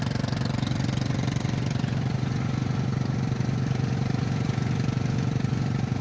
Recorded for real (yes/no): yes